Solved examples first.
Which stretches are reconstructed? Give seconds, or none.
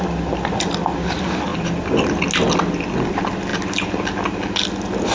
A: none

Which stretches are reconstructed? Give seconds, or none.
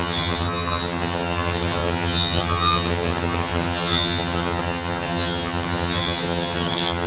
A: 0.0-7.1 (vocoder, HiFi-GAN)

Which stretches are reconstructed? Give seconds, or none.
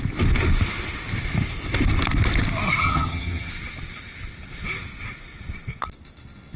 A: 2.8-3.5 (vocoder, HiFi-GAN)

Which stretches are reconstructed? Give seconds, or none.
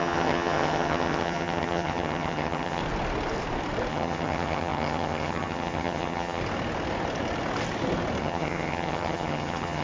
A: 0.0-2.8 (vocoder, HiFi-GAN); 3.9-6.4; 8.2-9.8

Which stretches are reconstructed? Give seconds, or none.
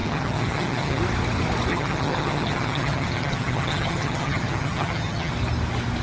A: 0.0-1.0 (vocoder, HiFi-GAN); 1.7-5.3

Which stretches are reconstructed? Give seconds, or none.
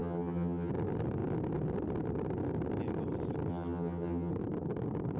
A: 0.0-0.7 (vocoder, HiFi-GAN); 3.5-4.3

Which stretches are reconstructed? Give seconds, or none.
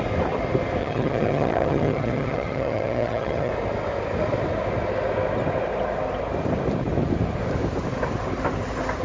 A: 0.8-3.5 (vocoder, HiFi-GAN)